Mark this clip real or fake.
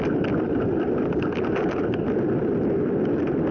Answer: real